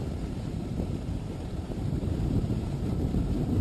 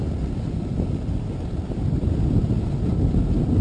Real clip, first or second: second